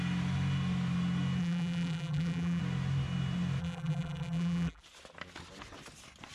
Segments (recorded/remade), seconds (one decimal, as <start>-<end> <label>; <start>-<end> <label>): 0.0-1.4 recorded; 1.4-2.6 remade; 2.6-3.6 recorded; 3.6-4.8 remade; 4.8-6.3 recorded